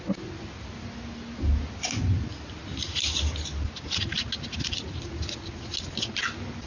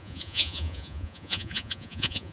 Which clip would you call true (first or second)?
first